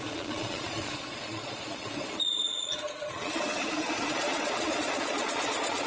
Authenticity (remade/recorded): remade